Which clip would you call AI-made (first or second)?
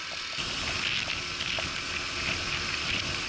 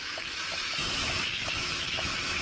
second